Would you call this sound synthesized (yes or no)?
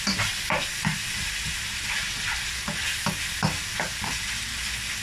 no